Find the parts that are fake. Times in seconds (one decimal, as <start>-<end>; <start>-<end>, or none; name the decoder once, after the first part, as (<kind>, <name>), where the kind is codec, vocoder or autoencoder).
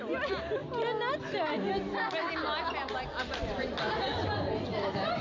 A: 3.2-5.2 (vocoder, BigVGAN v2)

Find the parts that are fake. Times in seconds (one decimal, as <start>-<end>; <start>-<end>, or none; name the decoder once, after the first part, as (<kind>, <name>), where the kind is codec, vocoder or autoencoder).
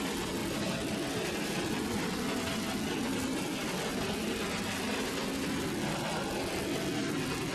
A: none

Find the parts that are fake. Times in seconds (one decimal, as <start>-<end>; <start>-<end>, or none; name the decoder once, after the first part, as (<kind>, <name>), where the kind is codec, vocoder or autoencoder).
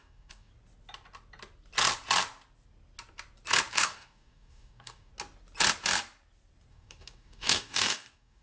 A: 0.0-0.5 (codec, DAC); 3.7-5.1; 6.7-8.4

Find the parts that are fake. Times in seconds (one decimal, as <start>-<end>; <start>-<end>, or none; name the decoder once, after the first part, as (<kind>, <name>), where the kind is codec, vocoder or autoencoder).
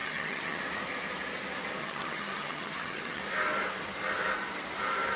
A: 0.0-0.6 (vocoder, HiFi-GAN); 1.8-3.2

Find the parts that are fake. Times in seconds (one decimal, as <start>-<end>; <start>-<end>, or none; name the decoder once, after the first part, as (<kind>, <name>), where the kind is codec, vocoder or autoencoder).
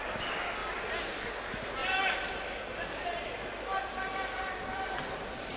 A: 0.6-1.4 (vocoder, BigVGAN v2); 1.8-5.6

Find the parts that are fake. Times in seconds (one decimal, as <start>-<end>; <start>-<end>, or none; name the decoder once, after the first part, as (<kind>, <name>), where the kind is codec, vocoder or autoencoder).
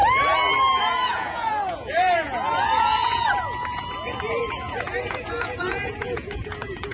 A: 0.8-6.9 (vocoder, Vocos)